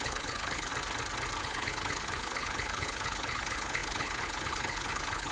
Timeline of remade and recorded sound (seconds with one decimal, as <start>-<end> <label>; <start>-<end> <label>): 0.0-0.7 remade; 0.7-1.4 recorded; 1.4-5.3 remade